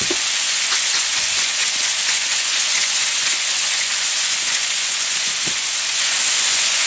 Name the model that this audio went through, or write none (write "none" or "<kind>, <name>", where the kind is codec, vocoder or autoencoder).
vocoder, Vocos